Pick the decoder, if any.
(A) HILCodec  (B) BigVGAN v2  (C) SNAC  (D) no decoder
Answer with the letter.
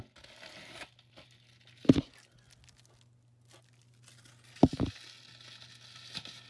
D